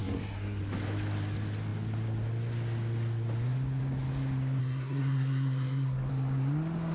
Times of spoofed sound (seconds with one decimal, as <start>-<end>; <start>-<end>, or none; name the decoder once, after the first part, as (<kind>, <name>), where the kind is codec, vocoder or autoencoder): 0.0-0.6 (codec, SNAC); 4.6-6.1